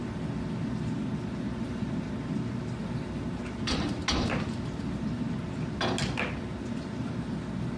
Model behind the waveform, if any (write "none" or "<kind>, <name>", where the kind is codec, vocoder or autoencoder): none